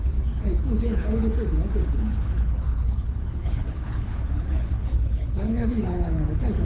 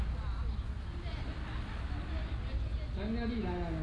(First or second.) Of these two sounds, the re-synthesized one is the first